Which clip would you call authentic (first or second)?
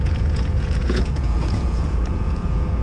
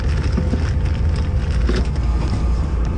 second